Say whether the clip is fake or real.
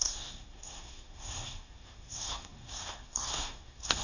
fake